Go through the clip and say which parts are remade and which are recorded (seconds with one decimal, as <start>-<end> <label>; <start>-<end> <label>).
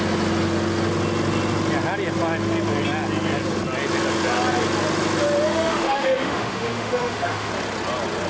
0.0-5.5 recorded; 5.5-7.5 remade; 7.5-8.3 recorded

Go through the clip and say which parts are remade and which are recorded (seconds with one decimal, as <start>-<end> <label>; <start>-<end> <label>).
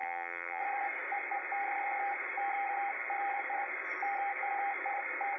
0.0-0.6 remade; 0.6-5.4 recorded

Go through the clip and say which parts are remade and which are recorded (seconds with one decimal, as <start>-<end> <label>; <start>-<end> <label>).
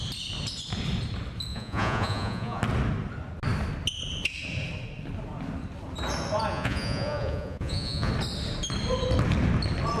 0.0-1.5 recorded; 1.5-2.6 remade; 2.6-6.5 recorded; 6.5-8.1 remade; 8.1-10.0 recorded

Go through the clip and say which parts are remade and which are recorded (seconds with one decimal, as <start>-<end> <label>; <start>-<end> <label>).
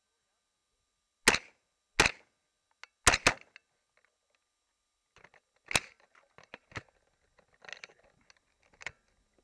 0.0-9.4 recorded